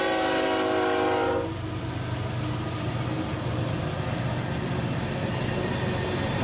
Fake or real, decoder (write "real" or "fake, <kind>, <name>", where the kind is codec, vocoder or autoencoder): real